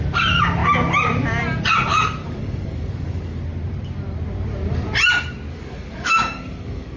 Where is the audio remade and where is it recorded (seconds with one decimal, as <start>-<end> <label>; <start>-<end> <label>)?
0.0-1.9 recorded; 1.9-3.4 remade; 3.4-5.5 recorded; 5.5-7.0 remade

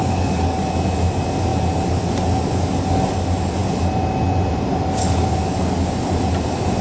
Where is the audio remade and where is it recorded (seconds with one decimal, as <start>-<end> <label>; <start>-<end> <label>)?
0.0-0.7 remade; 0.7-5.0 recorded; 5.0-5.6 remade; 5.6-6.8 recorded

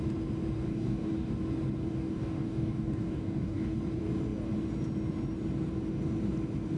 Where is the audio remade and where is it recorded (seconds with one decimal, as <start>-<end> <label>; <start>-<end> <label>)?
0.0-0.7 recorded; 0.7-1.3 remade; 1.3-1.9 recorded; 1.9-3.8 remade; 3.8-6.8 recorded

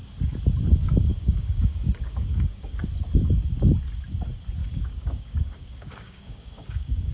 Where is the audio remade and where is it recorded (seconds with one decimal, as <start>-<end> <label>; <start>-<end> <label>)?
0.0-1.1 recorded; 1.1-2.8 remade; 2.8-4.6 recorded; 4.6-7.1 remade

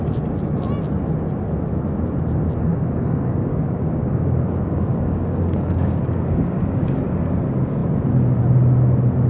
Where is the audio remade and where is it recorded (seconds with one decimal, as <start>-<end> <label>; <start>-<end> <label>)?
0.0-2.7 recorded; 2.7-7.0 remade; 7.0-9.3 recorded

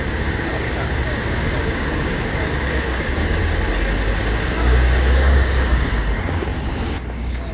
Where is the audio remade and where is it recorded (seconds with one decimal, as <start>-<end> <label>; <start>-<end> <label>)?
0.0-3.4 remade; 3.4-4.2 recorded; 4.2-7.5 remade